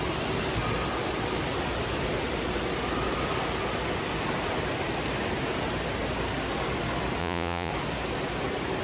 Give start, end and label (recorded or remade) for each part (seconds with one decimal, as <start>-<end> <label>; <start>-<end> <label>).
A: 0.0-7.2 recorded; 7.2-7.7 remade; 7.7-8.8 recorded